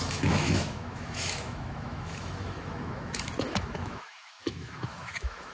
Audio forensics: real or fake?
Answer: fake